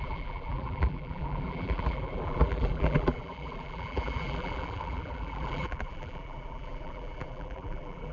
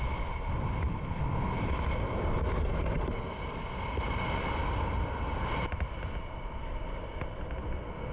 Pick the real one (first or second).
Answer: second